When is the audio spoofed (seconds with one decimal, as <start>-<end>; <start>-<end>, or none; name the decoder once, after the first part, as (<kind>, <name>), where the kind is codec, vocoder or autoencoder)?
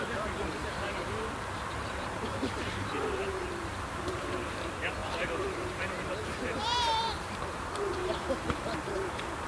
0.0-9.5 (vocoder, BigVGAN v2)